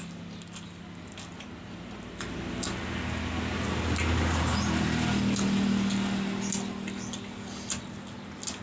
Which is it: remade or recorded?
recorded